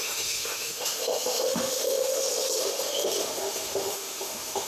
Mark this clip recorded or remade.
remade